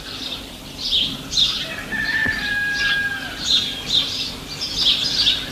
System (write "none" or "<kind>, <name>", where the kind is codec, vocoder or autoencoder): none